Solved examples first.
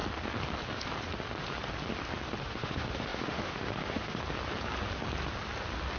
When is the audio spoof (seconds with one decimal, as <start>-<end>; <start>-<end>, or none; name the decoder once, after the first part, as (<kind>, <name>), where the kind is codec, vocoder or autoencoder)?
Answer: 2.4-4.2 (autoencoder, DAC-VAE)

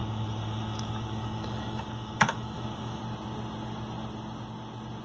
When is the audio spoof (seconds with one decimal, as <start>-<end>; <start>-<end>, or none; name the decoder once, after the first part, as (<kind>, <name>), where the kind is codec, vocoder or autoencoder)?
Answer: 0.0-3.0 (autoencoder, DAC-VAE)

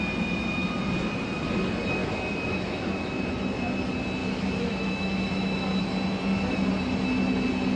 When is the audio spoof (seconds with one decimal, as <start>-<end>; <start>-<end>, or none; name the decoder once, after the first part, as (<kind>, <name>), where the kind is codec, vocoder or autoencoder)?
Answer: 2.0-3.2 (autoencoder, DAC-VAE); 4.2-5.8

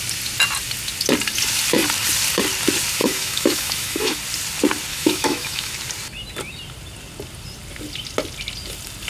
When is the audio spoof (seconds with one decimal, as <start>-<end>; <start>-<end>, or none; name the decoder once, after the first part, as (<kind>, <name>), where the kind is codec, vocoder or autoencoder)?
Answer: 3.0-4.2 (autoencoder, DAC-VAE); 4.9-5.7

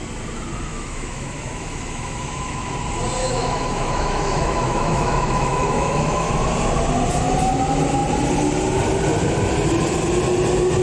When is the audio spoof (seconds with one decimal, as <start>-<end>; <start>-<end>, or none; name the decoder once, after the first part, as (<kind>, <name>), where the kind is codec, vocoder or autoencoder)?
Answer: 0.7-2.7 (autoencoder, DAC-VAE); 3.2-6.3